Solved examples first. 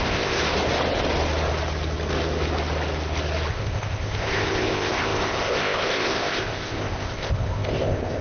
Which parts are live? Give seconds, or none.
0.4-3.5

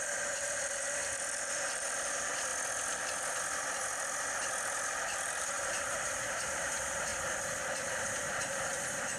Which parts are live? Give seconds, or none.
2.5-5.4; 7.1-7.9

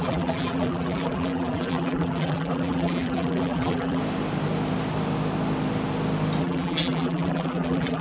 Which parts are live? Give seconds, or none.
4.0-6.4

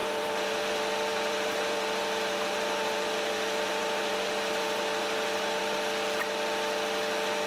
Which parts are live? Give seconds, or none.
0.6-1.1; 5.6-7.5